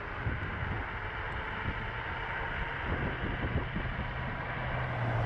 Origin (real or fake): real